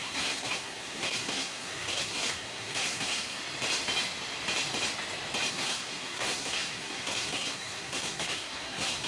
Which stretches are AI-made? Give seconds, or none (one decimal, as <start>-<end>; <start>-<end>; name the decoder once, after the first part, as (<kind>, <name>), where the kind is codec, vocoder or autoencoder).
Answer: 0.0-3.4 (codec, SNAC); 5.5-9.1

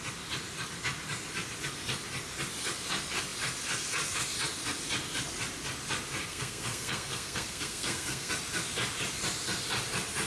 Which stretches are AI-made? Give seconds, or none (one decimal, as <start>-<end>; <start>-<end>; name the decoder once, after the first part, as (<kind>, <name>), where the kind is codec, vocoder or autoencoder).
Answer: 6.3-8.3 (codec, SNAC)

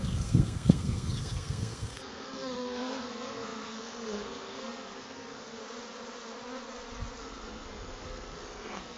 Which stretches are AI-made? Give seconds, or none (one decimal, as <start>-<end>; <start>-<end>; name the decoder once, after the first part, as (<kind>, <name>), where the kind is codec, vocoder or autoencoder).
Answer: 0.0-5.6 (codec, SNAC); 7.2-9.0

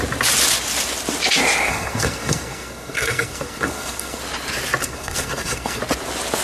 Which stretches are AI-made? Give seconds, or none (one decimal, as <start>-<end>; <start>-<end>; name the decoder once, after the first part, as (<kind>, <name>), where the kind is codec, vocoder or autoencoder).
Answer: 1.7-4.2 (codec, SNAC); 4.8-5.8

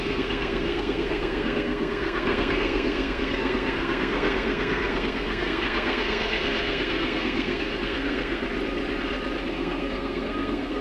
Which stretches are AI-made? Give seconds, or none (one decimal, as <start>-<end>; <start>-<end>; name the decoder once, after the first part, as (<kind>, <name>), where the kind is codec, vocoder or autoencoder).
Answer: 0.0-8.4 (codec, SNAC); 9.5-10.8

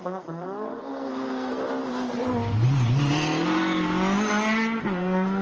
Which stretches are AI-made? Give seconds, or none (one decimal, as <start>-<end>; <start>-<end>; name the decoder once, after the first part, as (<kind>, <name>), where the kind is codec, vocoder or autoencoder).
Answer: 0.0-1.6 (codec, SNAC); 4.8-5.4

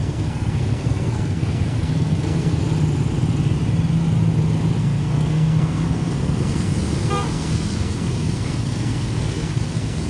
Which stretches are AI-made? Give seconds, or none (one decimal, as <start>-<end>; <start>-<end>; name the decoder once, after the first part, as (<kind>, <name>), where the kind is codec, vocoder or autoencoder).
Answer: 0.0-2.6 (codec, SNAC); 4.8-10.1

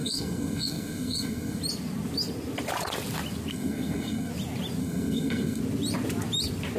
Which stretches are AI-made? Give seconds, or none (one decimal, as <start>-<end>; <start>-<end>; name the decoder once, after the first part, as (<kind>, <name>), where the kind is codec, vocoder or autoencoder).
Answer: 0.0-1.6 (codec, SNAC); 3.5-4.3; 4.8-5.6